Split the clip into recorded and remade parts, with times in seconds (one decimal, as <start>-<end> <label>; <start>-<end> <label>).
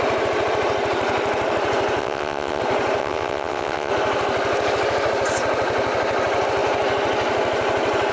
0.0-2.0 recorded; 2.0-2.6 remade; 2.6-3.0 recorded; 3.0-3.9 remade; 3.9-8.1 recorded